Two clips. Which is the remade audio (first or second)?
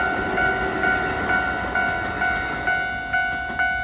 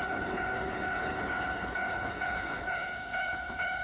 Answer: second